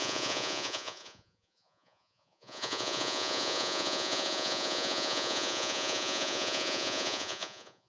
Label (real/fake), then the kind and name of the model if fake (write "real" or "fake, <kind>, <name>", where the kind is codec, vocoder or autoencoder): fake, vocoder, Vocos